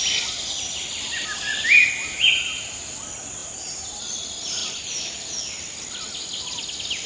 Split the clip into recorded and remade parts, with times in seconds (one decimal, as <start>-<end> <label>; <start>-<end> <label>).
0.0-3.4 recorded; 3.4-4.0 remade; 4.0-4.6 recorded; 4.6-5.2 remade; 5.2-7.1 recorded